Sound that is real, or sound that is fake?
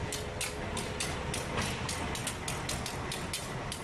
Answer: real